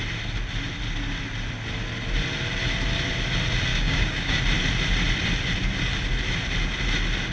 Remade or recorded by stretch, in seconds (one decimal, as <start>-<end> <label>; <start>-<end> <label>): 0.0-3.7 recorded; 3.7-4.4 remade; 4.4-7.3 recorded